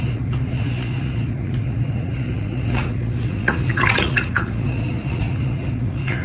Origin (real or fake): fake